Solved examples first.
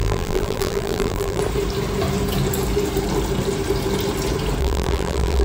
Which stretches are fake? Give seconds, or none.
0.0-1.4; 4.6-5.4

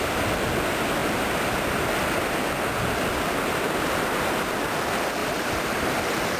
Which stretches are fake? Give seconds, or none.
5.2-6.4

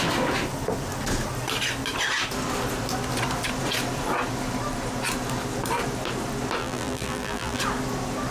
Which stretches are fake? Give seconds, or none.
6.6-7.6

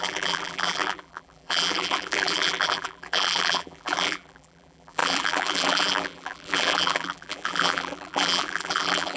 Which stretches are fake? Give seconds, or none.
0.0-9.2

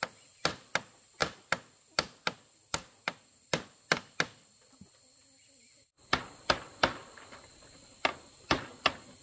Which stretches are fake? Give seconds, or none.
none